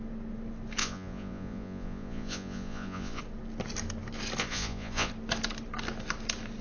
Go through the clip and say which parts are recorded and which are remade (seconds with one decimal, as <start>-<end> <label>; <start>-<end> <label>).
0.0-0.8 recorded; 0.8-3.2 remade; 3.2-4.4 recorded; 4.4-5.1 remade; 5.1-6.6 recorded

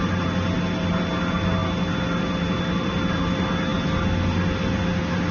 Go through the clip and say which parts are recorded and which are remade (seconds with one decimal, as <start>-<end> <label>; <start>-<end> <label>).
0.0-5.3 recorded

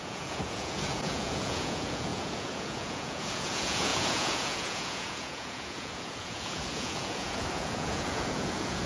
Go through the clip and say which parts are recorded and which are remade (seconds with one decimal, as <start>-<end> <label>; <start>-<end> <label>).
0.0-8.9 remade

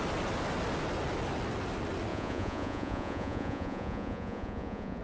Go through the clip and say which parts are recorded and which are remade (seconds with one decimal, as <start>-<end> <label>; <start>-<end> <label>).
0.0-2.1 recorded; 2.1-5.0 remade

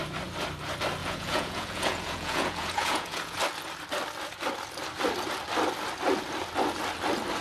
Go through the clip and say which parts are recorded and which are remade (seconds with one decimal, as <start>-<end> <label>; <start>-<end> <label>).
0.0-1.0 recorded; 1.0-3.4 remade; 3.4-7.4 recorded